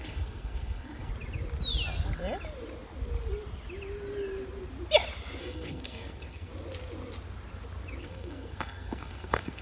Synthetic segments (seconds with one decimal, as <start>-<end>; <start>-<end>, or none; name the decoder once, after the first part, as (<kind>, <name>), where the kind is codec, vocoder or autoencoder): 0.0-1.1 (codec, SNAC); 5.4-6.5; 8.0-9.6

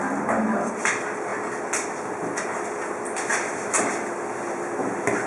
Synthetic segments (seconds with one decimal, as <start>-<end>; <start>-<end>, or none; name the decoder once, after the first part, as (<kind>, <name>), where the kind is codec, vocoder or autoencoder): none

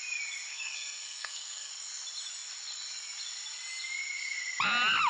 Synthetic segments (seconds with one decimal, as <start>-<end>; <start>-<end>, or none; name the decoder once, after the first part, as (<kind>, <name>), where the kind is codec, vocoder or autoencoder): 0.5-1.7 (codec, SNAC)